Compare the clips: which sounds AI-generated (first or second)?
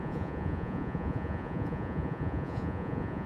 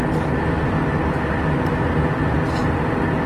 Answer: first